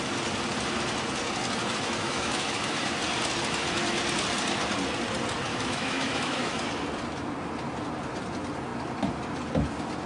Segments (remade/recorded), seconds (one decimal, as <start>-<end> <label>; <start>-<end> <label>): 0.0-1.6 recorded; 1.6-2.9 remade; 2.9-5.5 recorded; 5.5-6.6 remade; 6.6-10.1 recorded